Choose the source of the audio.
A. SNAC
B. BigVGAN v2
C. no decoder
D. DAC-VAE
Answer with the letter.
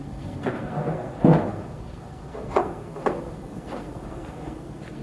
A